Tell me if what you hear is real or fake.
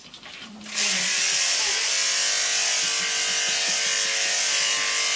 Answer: real